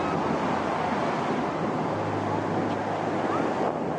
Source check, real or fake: real